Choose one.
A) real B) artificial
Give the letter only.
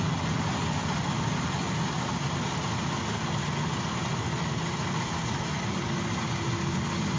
A